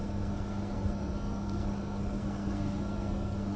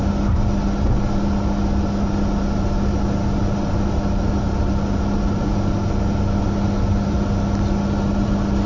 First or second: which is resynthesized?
first